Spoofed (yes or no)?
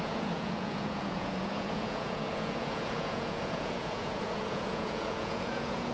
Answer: yes